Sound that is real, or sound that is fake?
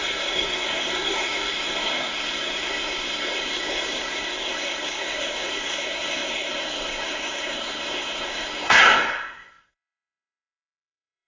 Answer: fake